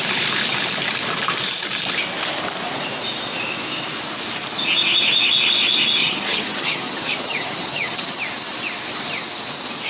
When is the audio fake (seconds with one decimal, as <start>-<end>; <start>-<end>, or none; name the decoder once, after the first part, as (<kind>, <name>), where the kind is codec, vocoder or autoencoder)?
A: 6.0-8.2 (vocoder, HiFi-GAN)